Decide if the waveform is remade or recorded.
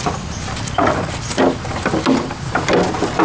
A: recorded